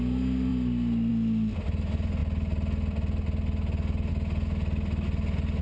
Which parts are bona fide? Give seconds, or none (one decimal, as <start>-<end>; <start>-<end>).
0.0-5.6